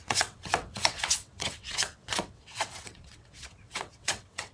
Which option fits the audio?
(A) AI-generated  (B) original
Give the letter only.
A